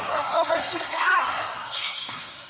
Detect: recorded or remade remade